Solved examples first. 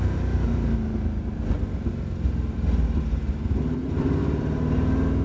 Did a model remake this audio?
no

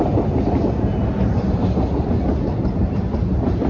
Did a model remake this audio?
no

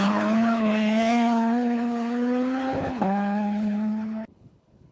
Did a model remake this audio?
yes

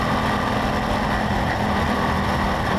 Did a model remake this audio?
no